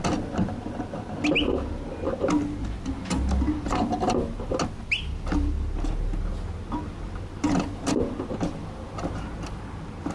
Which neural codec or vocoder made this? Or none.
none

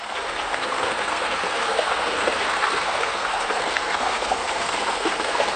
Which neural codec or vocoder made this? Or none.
codec, SNAC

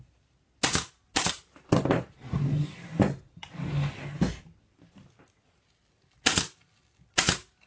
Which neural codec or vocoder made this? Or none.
none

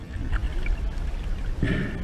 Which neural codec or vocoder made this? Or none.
none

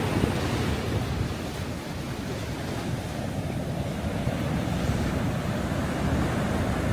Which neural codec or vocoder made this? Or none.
none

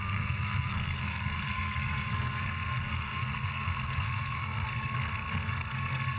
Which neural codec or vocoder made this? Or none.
codec, SNAC